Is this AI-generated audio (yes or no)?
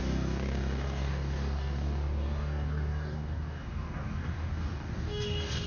yes